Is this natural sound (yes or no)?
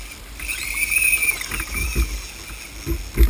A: yes